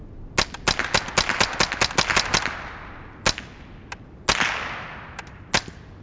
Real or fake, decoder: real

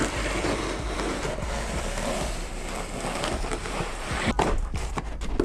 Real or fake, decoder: fake, vocoder, BigVGAN v2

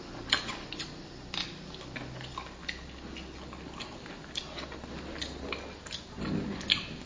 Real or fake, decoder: real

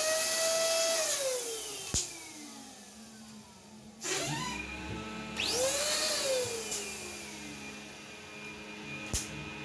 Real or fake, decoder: real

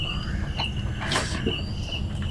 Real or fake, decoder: real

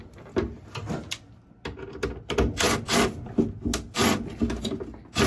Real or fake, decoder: real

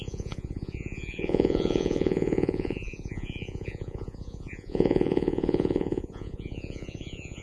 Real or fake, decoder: fake, vocoder, Vocos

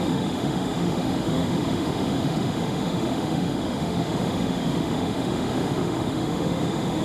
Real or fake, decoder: fake, autoencoder, DAC-VAE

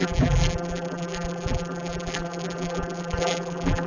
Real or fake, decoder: fake, vocoder, BigVGAN v2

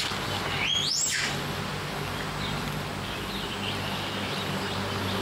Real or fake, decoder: real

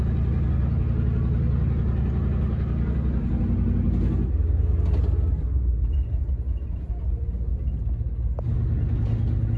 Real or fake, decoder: real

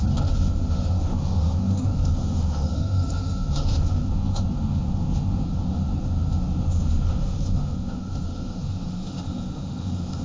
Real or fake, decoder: fake, autoencoder, DAC-VAE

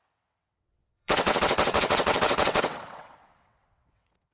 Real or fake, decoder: fake, vocoder, WaveNeXt